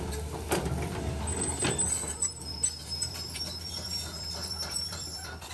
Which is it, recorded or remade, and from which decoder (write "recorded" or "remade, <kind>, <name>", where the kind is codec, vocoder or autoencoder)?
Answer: remade, vocoder, BigVGAN v2